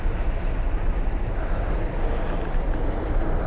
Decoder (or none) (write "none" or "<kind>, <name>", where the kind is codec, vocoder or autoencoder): none